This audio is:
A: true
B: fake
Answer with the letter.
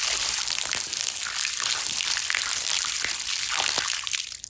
A